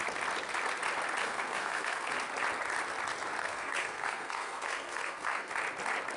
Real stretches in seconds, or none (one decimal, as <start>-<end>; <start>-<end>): 0.0-1.2; 2.1-3.4; 5.5-6.2